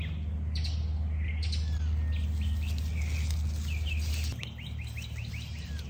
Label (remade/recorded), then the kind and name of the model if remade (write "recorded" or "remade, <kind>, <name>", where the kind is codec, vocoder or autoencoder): recorded